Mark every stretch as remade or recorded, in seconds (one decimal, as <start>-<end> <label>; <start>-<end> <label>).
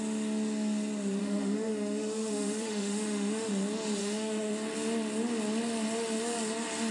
0.0-1.2 recorded; 1.2-3.5 remade; 3.5-4.0 recorded; 4.0-4.5 remade; 4.5-6.9 recorded